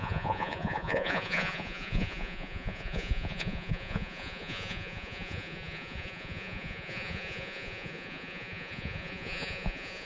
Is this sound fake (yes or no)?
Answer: yes